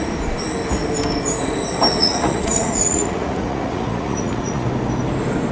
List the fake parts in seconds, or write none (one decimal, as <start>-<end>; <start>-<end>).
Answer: 2.0-4.7